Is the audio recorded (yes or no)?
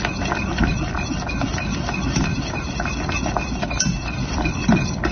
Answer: yes